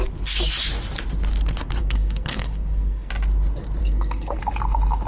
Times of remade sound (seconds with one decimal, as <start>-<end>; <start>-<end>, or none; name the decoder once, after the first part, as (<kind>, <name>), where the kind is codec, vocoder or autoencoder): 1.8-3.1 (codec, SNAC); 3.8-4.4